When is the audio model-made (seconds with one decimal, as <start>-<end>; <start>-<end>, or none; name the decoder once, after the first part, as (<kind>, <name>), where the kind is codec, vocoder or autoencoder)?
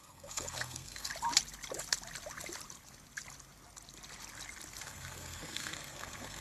0.0-1.1 (codec, SNAC); 4.8-6.4